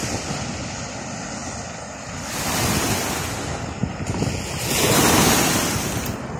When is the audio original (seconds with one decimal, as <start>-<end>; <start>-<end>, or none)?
0.0-6.4

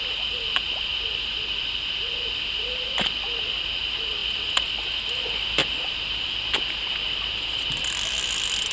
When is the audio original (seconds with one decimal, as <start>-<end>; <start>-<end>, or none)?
0.0-8.7

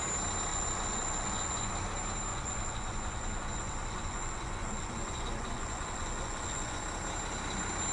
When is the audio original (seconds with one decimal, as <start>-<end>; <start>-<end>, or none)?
0.0-0.5; 1.7-2.3; 6.8-7.9

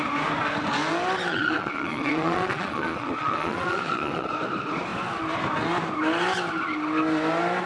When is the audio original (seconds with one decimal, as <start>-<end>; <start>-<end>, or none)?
0.0-1.3; 4.3-7.7

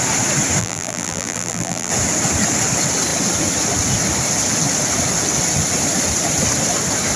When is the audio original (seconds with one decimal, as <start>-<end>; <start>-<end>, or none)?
0.0-0.6; 1.9-7.2